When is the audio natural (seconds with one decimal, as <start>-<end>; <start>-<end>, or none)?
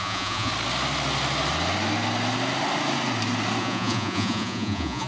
0.5-3.6